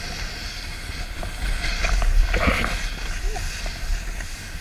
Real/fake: real